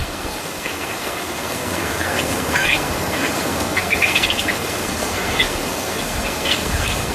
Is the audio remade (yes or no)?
yes